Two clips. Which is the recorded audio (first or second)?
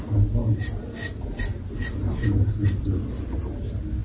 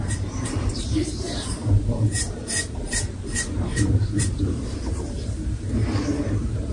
first